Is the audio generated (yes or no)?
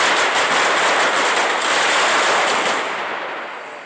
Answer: no